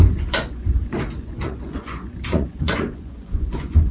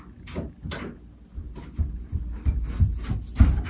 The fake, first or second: first